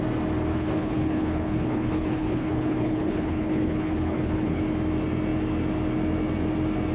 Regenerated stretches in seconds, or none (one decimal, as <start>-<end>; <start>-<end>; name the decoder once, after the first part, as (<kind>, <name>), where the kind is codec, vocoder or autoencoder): 0.5-4.6 (codec, HILCodec)